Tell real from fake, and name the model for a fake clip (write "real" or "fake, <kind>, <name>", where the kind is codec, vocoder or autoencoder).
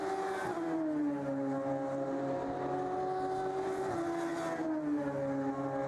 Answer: real